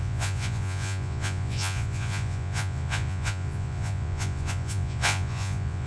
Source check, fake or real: fake